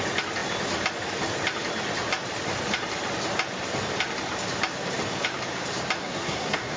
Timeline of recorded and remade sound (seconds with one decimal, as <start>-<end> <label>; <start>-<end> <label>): 0.0-6.0 recorded; 6.0-6.8 remade